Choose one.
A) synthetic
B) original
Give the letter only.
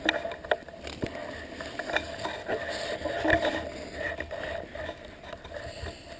B